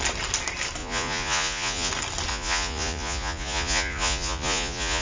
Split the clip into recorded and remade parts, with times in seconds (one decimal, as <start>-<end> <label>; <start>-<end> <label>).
0.0-0.8 recorded; 0.8-1.9 remade; 1.9-2.3 recorded; 2.3-5.0 remade